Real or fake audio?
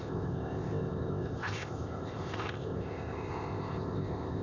fake